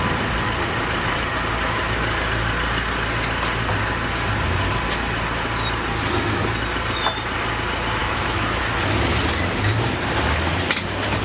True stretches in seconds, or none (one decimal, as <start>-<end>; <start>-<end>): 0.0-8.0; 8.6-11.2